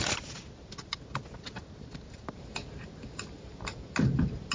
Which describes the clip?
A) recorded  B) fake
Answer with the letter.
A